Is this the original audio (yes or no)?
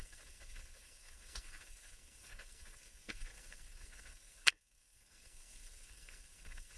no